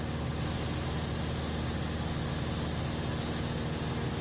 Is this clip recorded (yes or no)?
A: yes